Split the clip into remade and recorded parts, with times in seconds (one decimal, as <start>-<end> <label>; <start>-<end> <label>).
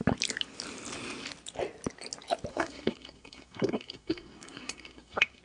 0.0-2.5 recorded; 2.5-5.4 remade